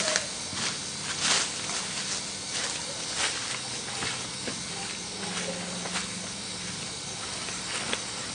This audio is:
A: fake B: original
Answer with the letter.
B